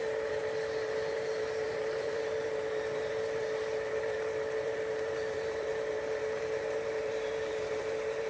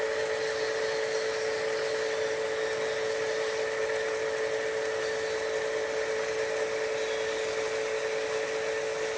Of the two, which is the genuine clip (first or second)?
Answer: second